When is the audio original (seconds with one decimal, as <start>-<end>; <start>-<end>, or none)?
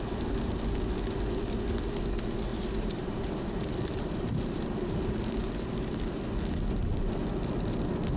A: 0.0-2.5; 6.2-8.2